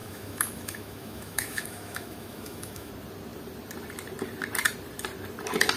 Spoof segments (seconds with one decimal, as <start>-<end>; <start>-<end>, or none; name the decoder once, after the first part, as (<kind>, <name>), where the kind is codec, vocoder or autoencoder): 0.0-2.9 (autoencoder, DAC-VAE)